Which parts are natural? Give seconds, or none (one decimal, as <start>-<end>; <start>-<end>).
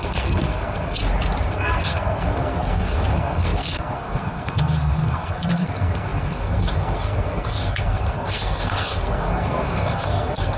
1.0-1.5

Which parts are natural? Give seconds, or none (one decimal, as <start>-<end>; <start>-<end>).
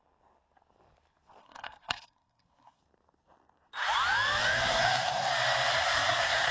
0.0-1.4; 2.8-4.7; 5.3-5.7